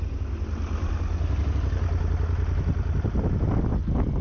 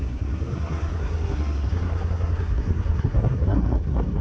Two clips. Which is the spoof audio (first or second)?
second